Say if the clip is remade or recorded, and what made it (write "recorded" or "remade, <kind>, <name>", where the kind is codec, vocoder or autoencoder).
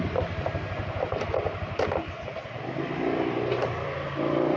recorded